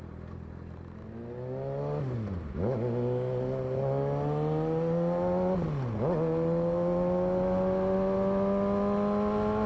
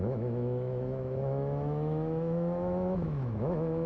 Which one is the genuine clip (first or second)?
first